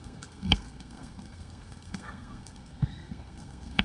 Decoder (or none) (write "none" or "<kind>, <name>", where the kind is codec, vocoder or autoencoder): codec, SNAC